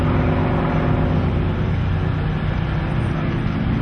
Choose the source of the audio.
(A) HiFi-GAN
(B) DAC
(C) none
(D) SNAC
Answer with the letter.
C